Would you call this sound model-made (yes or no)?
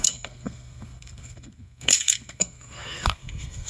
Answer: yes